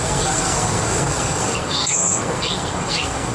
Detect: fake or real fake